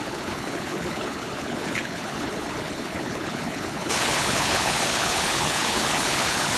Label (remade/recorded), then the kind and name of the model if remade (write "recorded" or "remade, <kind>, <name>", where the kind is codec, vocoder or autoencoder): remade, codec, HILCodec